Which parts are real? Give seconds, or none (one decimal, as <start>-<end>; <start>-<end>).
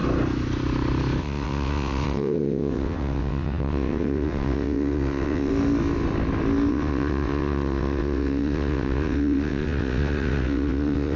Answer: 0.0-1.2; 5.5-6.7